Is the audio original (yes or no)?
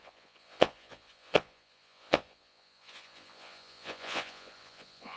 no